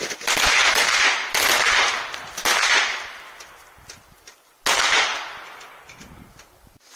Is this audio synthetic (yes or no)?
no